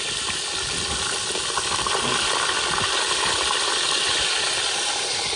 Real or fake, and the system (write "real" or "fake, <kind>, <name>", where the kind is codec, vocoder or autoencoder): fake, vocoder, BigVGAN v2